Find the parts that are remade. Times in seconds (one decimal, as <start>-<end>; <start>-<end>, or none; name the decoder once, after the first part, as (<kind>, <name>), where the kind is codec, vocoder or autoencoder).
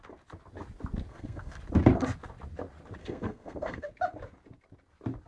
1.1-1.6 (codec, SNAC); 3.0-3.9